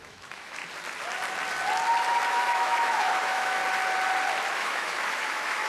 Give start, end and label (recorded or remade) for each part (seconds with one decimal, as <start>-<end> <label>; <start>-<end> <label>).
0.0-0.6 remade; 0.6-2.3 recorded; 2.3-3.6 remade; 3.6-4.5 recorded; 4.5-5.7 remade